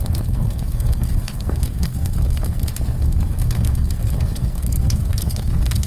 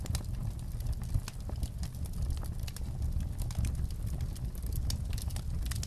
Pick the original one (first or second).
second